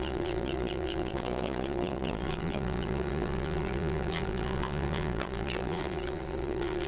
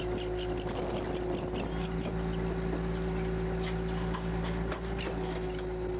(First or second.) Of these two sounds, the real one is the second